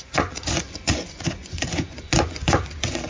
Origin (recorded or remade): remade